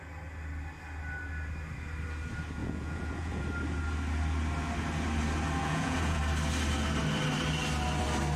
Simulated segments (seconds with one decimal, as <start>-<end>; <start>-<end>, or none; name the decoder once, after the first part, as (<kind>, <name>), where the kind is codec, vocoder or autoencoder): 2.6-3.4 (vocoder, Vocos); 5.6-6.2